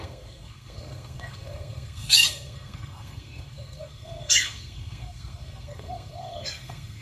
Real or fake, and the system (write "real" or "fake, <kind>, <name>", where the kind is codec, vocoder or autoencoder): fake, codec, SNAC